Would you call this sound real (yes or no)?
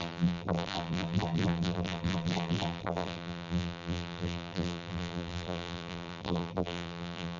no